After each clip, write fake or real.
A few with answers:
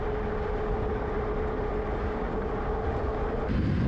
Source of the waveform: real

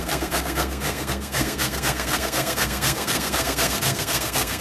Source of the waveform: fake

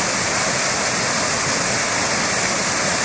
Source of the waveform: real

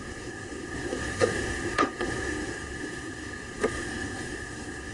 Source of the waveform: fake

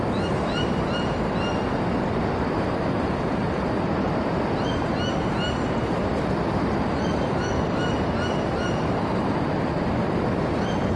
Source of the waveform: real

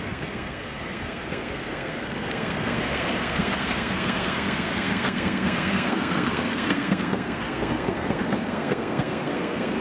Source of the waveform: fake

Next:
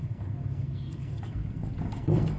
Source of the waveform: fake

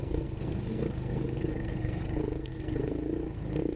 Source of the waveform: fake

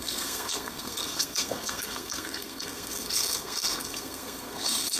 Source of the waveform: fake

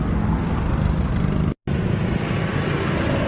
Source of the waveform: real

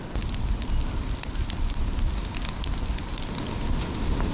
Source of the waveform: real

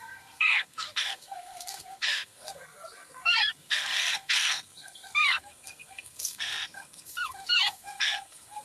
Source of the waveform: fake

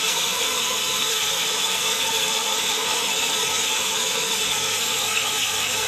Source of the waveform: fake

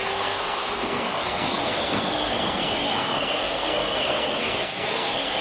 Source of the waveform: fake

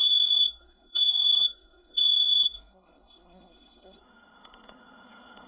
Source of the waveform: fake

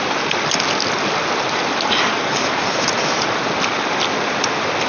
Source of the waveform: real